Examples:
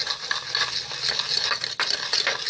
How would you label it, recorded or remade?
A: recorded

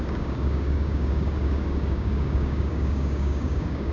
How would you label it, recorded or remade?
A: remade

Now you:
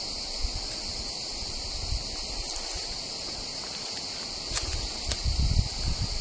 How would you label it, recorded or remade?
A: recorded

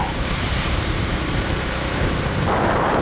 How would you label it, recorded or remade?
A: recorded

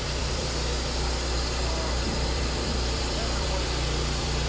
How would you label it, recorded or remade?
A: remade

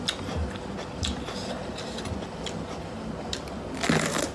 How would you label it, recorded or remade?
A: recorded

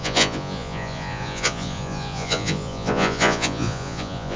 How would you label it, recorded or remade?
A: remade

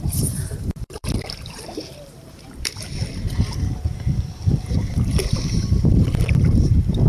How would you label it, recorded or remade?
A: remade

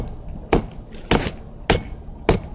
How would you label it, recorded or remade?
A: recorded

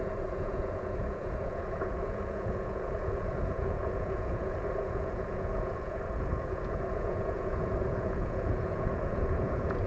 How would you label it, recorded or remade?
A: remade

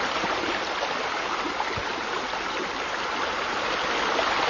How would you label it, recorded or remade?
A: recorded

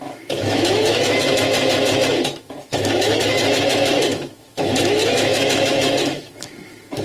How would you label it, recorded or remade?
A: remade